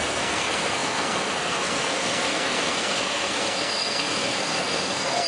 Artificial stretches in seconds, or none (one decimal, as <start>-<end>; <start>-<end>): 0.0-5.3